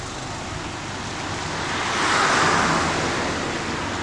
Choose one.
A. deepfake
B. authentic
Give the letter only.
B